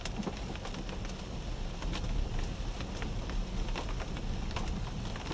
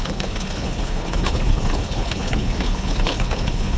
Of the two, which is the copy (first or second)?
second